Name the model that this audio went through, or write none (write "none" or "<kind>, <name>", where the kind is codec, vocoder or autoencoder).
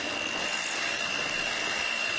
none